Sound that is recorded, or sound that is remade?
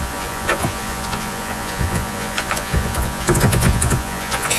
remade